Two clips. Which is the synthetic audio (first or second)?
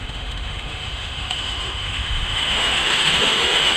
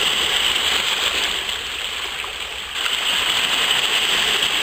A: first